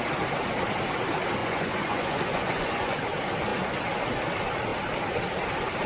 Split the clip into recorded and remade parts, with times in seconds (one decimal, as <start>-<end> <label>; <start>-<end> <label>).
0.0-1.4 recorded; 1.4-3.0 remade; 3.0-5.9 recorded